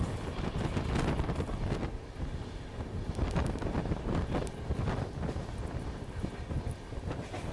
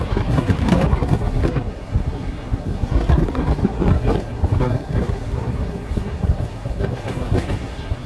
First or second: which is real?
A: first